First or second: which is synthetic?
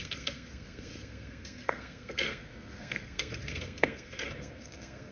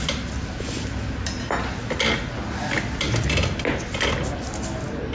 first